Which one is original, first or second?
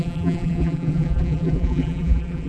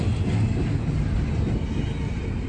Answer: second